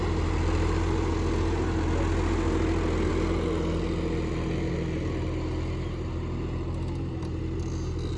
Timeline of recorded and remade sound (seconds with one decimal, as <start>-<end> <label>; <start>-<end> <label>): 0.0-8.2 recorded